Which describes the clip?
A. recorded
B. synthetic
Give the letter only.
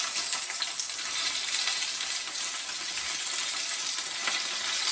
A